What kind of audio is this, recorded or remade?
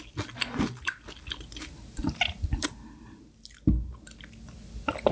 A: recorded